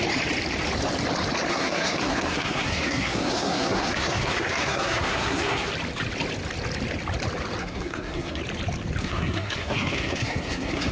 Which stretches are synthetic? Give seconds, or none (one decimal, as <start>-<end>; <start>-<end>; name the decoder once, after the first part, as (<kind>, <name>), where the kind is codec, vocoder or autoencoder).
1.5-5.7 (codec, SNAC); 7.6-8.4; 9.0-10.9

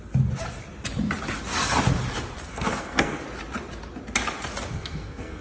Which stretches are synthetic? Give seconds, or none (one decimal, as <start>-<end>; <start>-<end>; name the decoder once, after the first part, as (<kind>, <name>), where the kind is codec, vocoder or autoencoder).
2.5-3.2 (codec, SNAC); 4.7-5.4

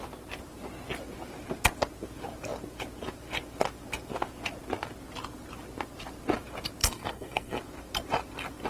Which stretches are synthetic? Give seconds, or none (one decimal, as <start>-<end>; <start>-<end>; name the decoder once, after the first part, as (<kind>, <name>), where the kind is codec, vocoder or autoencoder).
6.8-7.6 (codec, SNAC)

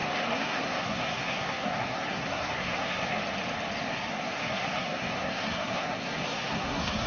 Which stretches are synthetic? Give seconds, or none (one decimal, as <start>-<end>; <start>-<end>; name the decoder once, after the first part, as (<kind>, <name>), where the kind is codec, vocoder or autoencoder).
0.0-3.2 (codec, SNAC); 3.9-7.1

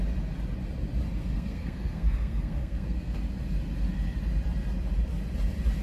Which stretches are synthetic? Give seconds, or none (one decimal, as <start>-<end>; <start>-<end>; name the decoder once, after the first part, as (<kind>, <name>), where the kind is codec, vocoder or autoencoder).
1.2-3.2 (codec, SNAC)

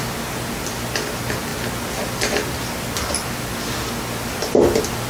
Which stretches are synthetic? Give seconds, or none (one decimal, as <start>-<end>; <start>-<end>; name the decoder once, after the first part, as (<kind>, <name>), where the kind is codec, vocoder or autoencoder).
none